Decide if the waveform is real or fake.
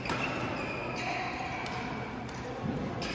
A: real